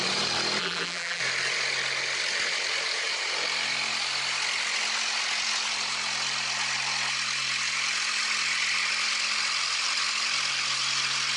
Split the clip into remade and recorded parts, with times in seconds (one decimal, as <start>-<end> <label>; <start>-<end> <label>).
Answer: 0.0-0.6 recorded; 0.6-1.2 remade; 1.2-11.4 recorded